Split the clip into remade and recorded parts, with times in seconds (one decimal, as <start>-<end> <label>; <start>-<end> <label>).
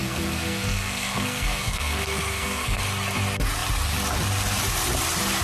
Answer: 0.0-2.8 remade; 2.8-5.4 recorded